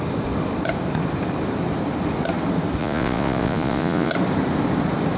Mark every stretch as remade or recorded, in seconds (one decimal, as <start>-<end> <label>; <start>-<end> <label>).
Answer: 0.0-2.8 recorded; 2.8-4.1 remade; 4.1-5.2 recorded